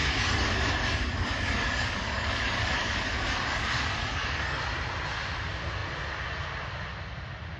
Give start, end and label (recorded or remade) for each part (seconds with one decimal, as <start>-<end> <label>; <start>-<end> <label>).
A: 0.0-4.6 remade; 4.6-7.6 recorded